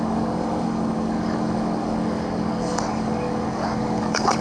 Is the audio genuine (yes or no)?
no